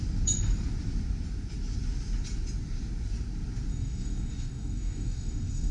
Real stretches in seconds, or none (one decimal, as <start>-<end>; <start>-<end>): 0.0-3.7